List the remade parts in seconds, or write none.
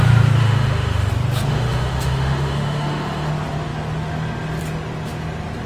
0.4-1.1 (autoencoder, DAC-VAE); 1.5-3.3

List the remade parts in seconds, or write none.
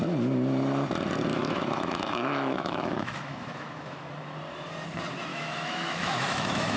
1.3-4.1 (autoencoder, DAC-VAE); 5.3-6.8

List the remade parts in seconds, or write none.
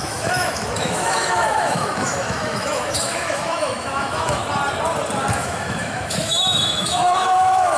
0.0-4.4 (autoencoder, DAC-VAE); 5.3-7.8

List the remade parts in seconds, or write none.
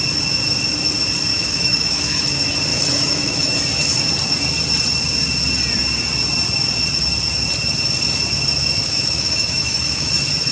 1.3-2.3 (autoencoder, DAC-VAE); 2.7-3.6; 8.8-10.1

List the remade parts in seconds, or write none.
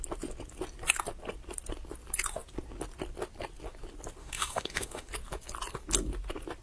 4.2-5.1 (autoencoder, DAC-VAE)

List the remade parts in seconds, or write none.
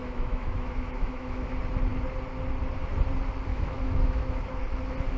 0.0-1.5 (autoencoder, DAC-VAE); 3.5-4.5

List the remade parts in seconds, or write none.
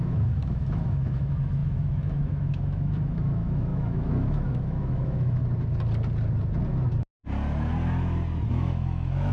0.0-5.4 (autoencoder, DAC-VAE); 8.5-9.3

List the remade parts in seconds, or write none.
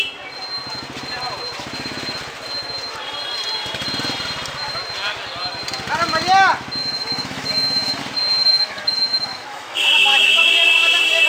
6.8-8.0 (autoencoder, DAC-VAE); 8.4-10.5